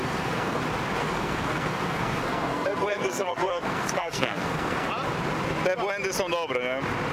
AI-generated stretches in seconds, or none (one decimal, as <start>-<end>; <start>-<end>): 0.0-0.6; 1.0-4.9